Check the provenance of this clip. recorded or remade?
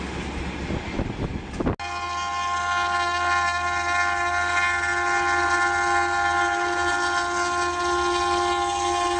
recorded